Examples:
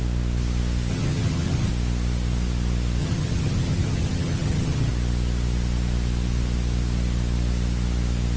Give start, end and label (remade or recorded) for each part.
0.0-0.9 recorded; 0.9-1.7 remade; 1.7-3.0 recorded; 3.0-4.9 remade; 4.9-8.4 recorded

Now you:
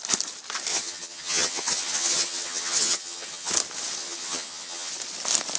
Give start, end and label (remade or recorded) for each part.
0.0-0.7 recorded; 0.7-3.5 remade; 3.5-4.0 recorded; 4.0-4.9 remade; 4.9-5.6 recorded

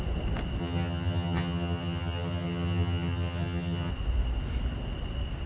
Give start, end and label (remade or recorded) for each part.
0.0-0.6 recorded; 0.6-3.9 remade; 3.9-5.5 recorded

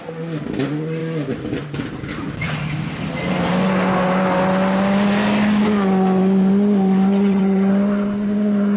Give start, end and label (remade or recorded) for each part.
0.0-7.1 recorded; 7.1-7.7 remade; 7.7-8.8 recorded

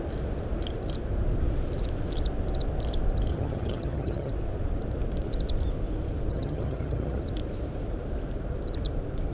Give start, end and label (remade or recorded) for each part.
0.0-3.3 recorded; 3.3-4.3 remade; 4.3-6.3 recorded; 6.3-7.2 remade; 7.2-9.3 recorded